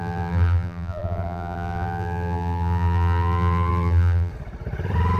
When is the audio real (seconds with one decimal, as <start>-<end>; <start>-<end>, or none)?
4.3-5.2

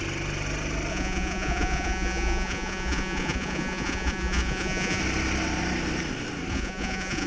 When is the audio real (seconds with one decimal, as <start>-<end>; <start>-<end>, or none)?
0.0-0.9; 5.0-6.5

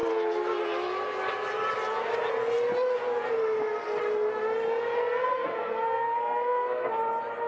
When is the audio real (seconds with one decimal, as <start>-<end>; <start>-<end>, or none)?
0.0-5.3; 6.9-7.5

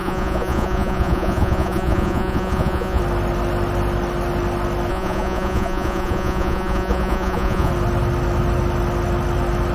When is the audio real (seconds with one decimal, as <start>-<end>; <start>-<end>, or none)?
3.0-4.9; 7.7-9.7

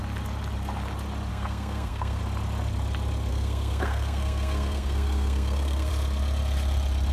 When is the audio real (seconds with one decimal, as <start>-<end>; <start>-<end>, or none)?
0.0-1.3; 2.2-3.3; 5.9-7.1

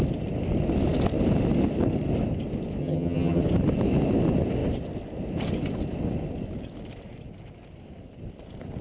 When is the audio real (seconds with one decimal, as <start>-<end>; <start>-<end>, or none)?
0.0-2.8; 3.4-8.8

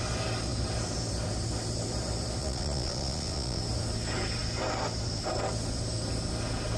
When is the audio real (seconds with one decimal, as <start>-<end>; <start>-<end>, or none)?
0.0-2.4; 3.6-6.8

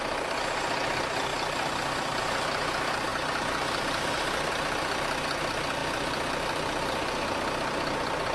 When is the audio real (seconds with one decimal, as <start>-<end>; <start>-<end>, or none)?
0.0-8.3